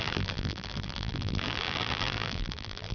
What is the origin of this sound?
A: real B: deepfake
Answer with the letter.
B